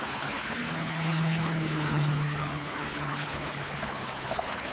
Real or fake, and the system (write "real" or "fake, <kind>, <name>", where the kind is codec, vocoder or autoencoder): fake, codec, HILCodec